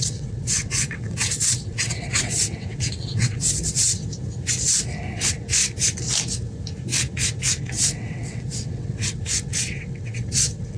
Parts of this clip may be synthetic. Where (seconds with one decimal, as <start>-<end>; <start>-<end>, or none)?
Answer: 0.0-4.0; 5.1-5.6; 7.5-10.8